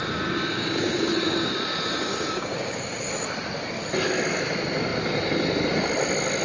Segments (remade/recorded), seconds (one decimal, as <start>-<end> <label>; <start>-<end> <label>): 0.0-0.5 recorded; 0.5-1.5 remade; 1.5-2.1 recorded; 2.1-3.1 remade; 3.1-6.4 recorded